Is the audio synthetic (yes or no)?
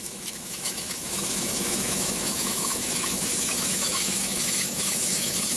yes